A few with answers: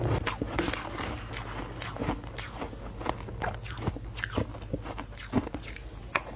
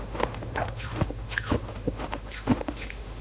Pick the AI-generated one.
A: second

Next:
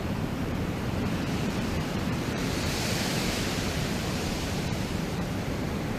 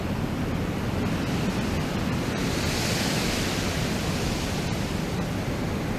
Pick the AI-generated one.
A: first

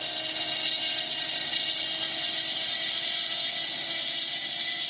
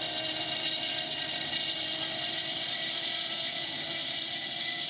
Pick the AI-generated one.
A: second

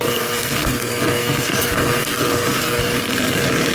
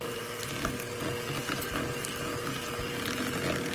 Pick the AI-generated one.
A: first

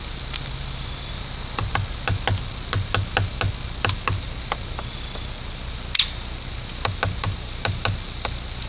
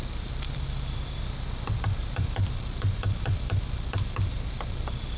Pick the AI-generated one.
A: second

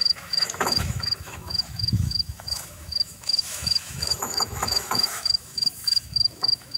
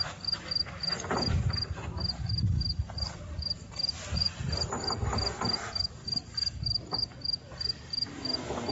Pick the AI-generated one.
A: first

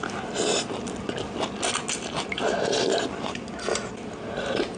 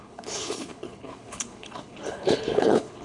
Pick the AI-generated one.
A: second